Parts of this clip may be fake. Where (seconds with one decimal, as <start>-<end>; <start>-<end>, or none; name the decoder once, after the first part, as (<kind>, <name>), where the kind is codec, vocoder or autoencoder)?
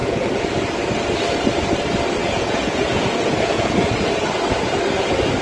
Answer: 0.0-0.5 (vocoder, Vocos); 2.2-3.9